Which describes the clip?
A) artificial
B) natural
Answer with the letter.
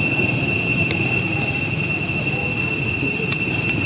B